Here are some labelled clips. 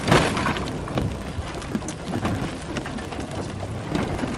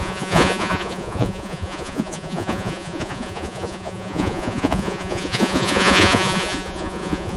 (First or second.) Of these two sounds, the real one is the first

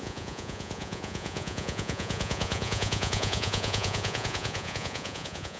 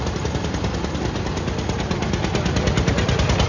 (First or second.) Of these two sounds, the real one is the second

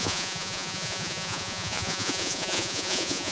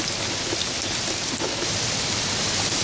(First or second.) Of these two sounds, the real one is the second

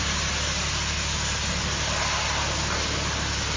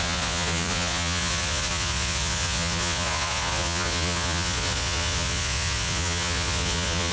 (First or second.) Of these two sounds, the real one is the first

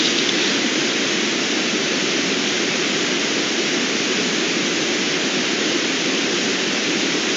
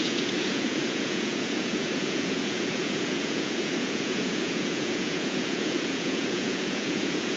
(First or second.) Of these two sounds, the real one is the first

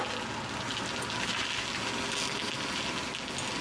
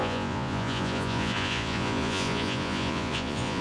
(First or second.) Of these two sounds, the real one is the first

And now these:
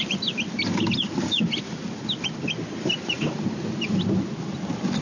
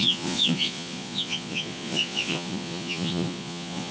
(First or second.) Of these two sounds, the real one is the first